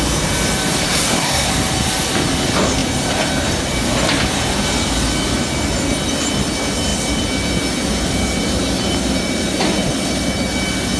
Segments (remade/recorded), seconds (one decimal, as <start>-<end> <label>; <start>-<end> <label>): 0.0-0.8 recorded; 0.8-1.5 remade; 1.5-11.0 recorded